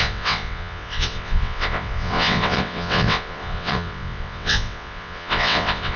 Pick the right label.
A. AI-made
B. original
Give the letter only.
A